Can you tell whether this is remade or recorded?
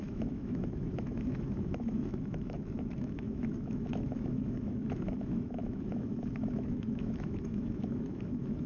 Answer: remade